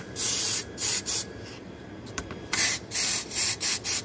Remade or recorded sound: remade